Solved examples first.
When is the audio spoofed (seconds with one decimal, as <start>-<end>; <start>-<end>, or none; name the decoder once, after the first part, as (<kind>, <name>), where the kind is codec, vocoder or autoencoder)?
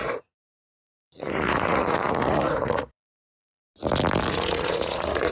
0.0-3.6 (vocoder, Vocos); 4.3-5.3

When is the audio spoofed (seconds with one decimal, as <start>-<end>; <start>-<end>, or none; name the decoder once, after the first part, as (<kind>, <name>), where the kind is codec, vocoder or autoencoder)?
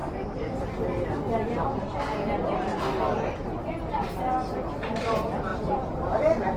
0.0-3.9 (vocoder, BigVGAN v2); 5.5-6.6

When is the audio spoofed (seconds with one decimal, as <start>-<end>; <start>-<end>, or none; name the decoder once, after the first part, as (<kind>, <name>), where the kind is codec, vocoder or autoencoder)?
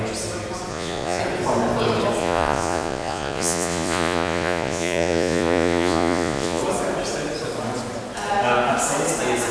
0.7-1.2 (vocoder, Vocos); 2.2-6.6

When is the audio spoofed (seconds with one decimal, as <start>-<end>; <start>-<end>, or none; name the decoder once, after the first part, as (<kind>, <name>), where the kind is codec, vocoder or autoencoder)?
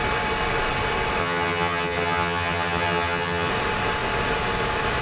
1.2-3.5 (vocoder, HiFi-GAN)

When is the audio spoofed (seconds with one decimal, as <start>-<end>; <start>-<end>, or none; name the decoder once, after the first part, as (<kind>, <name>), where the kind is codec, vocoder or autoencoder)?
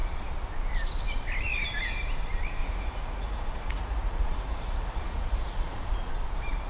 2.6-6.1 (vocoder, Vocos)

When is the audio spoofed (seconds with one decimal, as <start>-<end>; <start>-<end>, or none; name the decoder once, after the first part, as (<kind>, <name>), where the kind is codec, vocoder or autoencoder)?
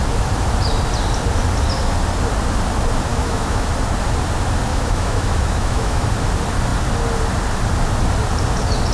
3.1-3.7 (autoencoder, DAC-VAE); 4.7-6.1